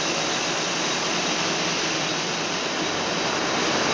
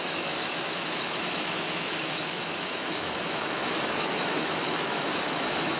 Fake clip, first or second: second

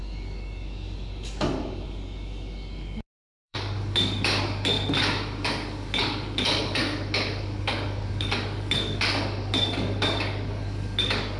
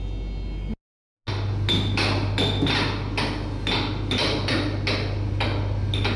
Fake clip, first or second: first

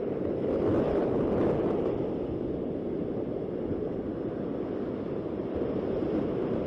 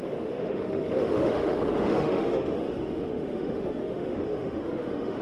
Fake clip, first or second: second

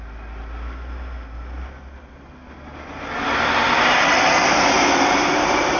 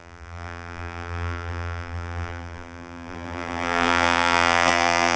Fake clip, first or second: second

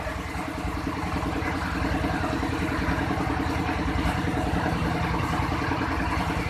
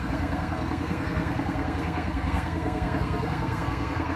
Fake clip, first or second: second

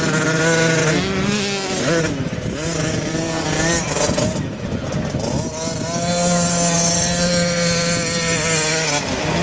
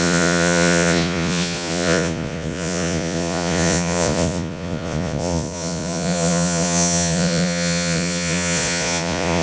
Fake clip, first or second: second